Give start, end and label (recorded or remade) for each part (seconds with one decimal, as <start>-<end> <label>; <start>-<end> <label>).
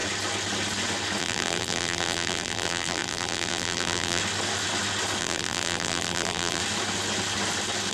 0.0-1.2 recorded; 1.2-4.2 remade; 4.2-5.2 recorded; 5.2-6.6 remade; 6.6-7.9 recorded